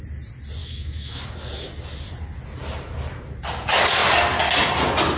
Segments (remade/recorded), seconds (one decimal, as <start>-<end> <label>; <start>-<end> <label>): 0.0-0.6 recorded; 0.6-1.2 remade; 1.2-5.2 recorded